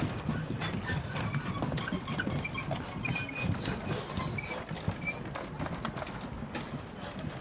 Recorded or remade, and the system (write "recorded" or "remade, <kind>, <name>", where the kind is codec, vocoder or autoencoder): recorded